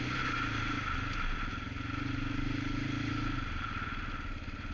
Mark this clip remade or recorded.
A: recorded